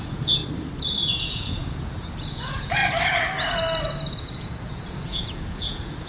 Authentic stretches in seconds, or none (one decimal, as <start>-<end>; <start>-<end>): 0.4-1.0; 2.8-4.1